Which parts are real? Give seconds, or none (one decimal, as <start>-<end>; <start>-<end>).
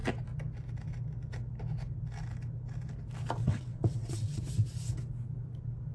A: 0.0-3.4; 4.4-5.9